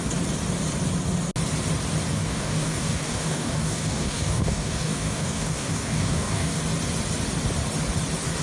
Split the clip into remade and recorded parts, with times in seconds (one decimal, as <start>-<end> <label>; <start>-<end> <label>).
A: 0.0-2.1 recorded; 2.1-6.6 remade; 6.6-8.4 recorded